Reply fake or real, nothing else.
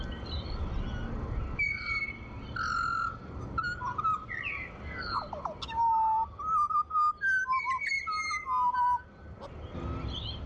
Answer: real